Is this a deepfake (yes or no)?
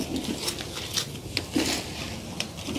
no